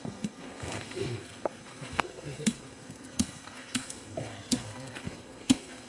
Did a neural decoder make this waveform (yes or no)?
yes